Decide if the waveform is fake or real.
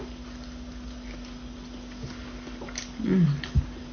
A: real